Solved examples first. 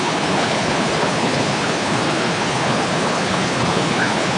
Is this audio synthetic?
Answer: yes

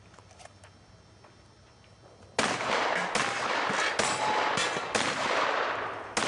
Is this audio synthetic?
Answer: no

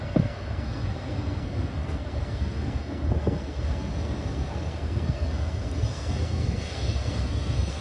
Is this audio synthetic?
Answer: yes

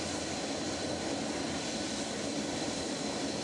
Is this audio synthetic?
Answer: no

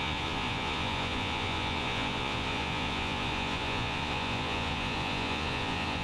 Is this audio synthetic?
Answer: yes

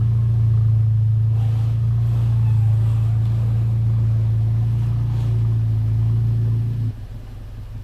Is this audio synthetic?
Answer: no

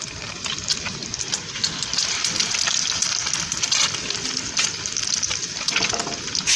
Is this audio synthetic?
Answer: no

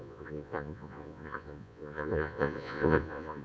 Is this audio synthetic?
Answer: yes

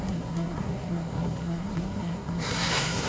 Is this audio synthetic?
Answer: yes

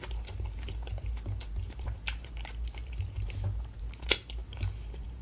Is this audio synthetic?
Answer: yes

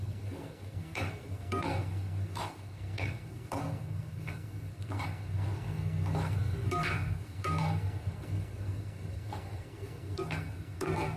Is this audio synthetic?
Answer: yes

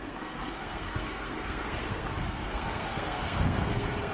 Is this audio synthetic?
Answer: yes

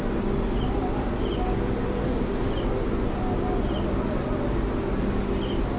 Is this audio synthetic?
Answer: no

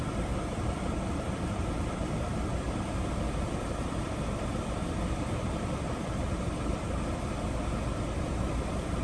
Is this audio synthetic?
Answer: yes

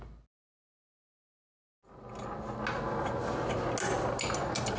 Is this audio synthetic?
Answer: no